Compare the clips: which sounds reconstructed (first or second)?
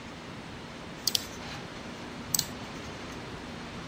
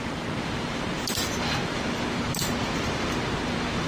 first